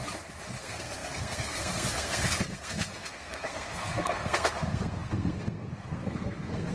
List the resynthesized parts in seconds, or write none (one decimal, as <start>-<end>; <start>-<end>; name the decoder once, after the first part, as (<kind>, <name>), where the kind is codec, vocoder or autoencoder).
0.6-6.7 (codec, SNAC)